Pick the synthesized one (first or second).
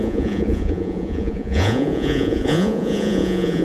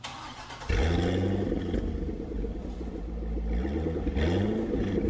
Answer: first